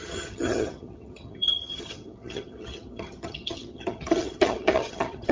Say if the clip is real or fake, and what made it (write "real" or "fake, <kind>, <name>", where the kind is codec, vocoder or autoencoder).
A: fake, vocoder, HiFi-GAN